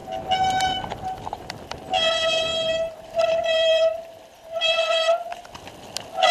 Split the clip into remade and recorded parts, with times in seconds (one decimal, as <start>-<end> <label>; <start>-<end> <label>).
0.0-2.1 recorded; 2.1-2.5 remade; 2.5-3.0 recorded; 3.0-5.3 remade; 5.3-6.3 recorded